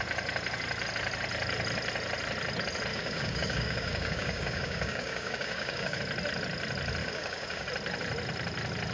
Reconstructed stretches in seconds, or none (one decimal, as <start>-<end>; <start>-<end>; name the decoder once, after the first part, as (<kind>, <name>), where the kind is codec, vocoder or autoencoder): 2.9-6.0 (codec, DAC); 7.0-7.7